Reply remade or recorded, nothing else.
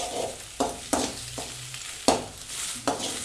recorded